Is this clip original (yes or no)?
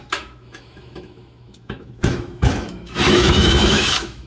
no